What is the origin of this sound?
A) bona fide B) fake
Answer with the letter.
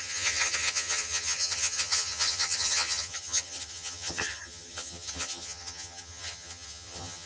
B